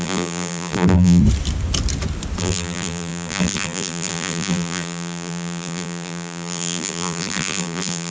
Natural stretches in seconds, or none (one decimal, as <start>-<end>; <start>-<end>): 1.2-2.4